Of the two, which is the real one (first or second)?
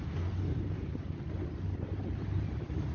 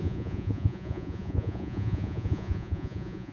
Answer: first